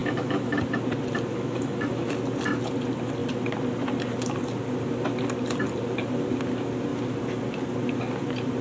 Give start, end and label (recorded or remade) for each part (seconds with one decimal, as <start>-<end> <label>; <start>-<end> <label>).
0.0-0.6 remade; 0.6-1.3 recorded; 1.3-2.1 remade; 2.1-8.6 recorded